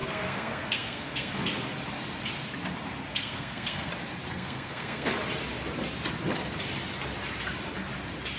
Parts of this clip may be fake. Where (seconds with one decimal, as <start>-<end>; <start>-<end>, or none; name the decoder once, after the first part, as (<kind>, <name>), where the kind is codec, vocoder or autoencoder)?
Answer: 0.0-1.4 (codec, SNAC); 3.1-3.9; 4.3-5.1